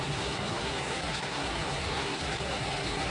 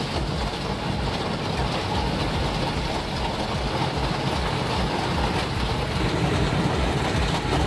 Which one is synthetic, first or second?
first